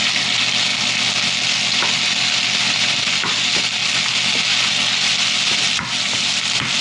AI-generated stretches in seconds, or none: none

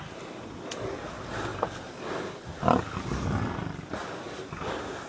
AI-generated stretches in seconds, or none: none

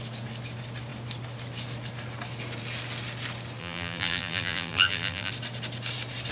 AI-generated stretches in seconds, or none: 3.6-5.3 (vocoder, BigVGAN v2)

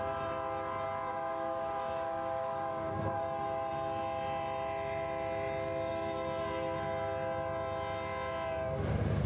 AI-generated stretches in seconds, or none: 1.1-3.2 (codec, DAC)

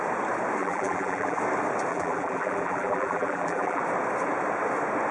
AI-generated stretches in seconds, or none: 0.6-1.4 (vocoder, BigVGAN v2); 1.9-3.8

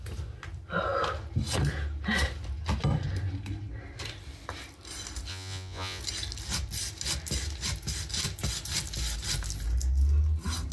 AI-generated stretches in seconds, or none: 5.3-6.0 (vocoder, Vocos)